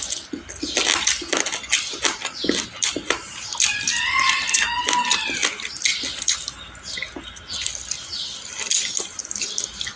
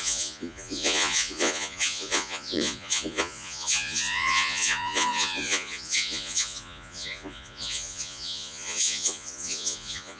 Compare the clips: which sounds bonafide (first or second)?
first